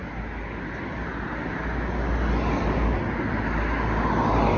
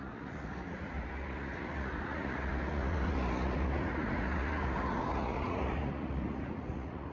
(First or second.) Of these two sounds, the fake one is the second